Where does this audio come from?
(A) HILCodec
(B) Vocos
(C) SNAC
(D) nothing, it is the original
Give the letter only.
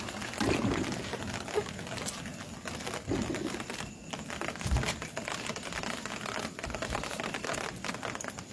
D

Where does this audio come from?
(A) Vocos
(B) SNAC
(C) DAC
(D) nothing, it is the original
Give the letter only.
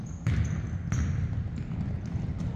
D